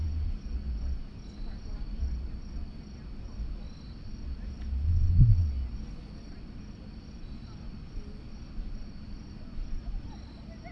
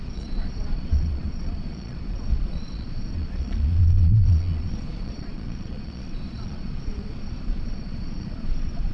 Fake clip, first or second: second